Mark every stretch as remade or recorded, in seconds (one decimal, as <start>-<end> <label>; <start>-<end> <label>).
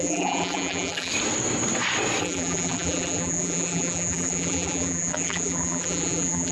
0.0-1.1 remade; 1.1-2.2 recorded; 2.2-6.5 remade